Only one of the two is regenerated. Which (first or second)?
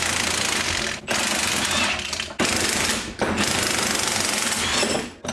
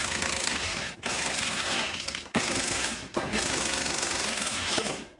second